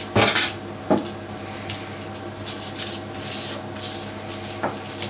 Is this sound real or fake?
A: real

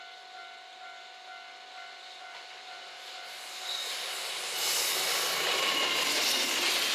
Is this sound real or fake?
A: real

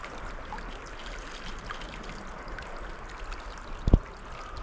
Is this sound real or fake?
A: real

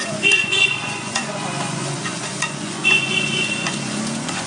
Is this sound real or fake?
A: fake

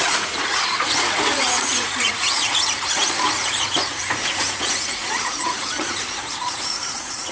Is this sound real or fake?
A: fake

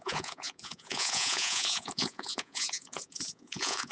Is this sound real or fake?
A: fake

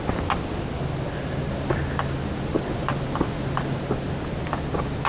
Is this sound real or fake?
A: real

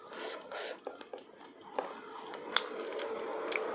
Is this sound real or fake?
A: real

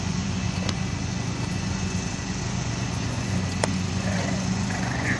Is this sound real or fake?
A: fake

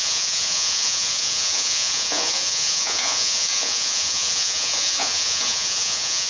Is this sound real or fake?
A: fake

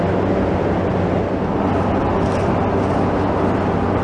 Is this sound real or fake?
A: real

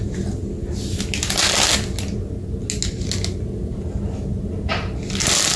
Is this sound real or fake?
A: real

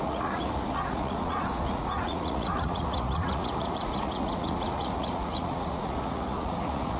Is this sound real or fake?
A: fake